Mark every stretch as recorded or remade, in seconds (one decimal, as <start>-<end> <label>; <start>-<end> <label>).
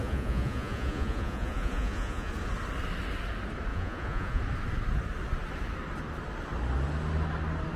0.0-2.3 remade; 2.3-3.7 recorded; 3.7-4.4 remade; 4.4-7.8 recorded